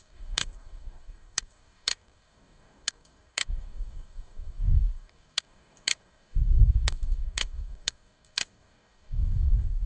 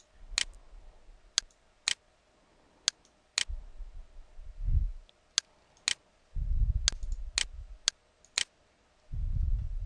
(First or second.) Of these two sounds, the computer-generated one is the first